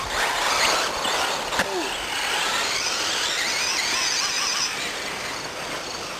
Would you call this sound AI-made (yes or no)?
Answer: no